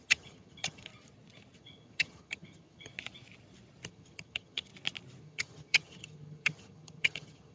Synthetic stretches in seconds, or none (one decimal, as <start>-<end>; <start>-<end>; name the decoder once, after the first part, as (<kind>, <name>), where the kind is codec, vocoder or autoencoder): 0.0-0.9 (vocoder, HiFi-GAN); 1.6-2.9; 3.9-4.7; 5.2-7.5